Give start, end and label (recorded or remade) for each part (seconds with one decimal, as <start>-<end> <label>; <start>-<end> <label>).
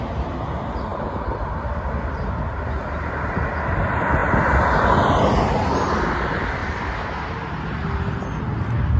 0.0-0.9 recorded; 0.9-1.5 remade; 1.5-9.0 recorded